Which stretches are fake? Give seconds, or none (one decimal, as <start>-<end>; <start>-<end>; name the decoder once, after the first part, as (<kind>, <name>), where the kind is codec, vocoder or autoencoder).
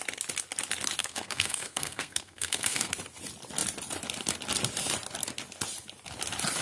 1.0-2.9 (codec, SNAC)